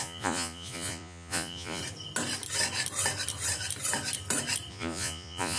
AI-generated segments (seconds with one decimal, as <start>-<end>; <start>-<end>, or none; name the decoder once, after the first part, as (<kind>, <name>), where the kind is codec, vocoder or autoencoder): 0.0-1.8 (vocoder, Vocos); 4.7-5.6